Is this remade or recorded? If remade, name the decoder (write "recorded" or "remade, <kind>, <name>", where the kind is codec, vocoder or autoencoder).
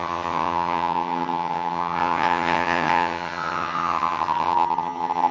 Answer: remade, vocoder, HiFi-GAN